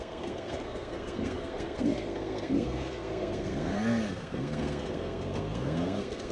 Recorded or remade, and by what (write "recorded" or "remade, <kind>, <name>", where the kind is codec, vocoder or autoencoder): remade, codec, SNAC